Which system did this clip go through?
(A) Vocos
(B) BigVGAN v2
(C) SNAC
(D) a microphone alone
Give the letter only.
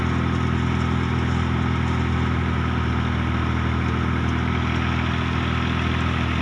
D